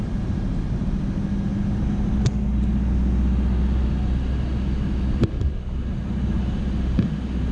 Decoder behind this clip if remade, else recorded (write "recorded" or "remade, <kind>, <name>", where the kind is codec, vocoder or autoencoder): recorded